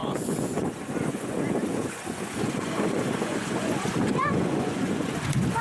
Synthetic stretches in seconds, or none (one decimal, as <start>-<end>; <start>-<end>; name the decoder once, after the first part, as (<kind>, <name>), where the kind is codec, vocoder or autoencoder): 0.0-5.6 (vocoder, Vocos)